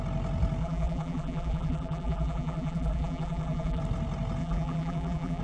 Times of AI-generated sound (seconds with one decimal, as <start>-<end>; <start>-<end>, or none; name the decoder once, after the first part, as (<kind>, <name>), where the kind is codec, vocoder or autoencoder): 0.6-3.8 (vocoder, BigVGAN v2); 4.4-5.4